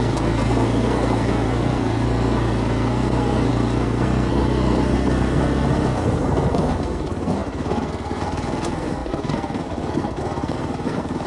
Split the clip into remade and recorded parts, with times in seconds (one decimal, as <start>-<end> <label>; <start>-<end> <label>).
0.0-11.3 remade